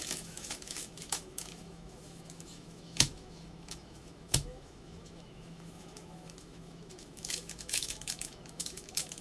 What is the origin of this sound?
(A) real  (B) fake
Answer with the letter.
B